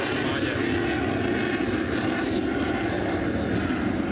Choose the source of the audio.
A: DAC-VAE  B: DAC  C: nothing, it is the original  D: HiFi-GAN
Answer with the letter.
C